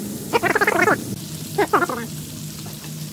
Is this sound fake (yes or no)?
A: no